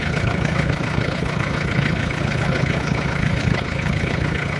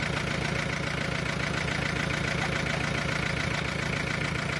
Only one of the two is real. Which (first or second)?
second